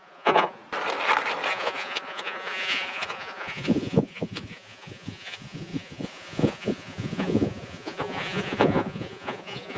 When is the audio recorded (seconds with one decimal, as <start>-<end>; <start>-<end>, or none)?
0.6-1.5